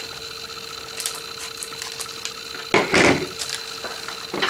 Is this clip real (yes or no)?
yes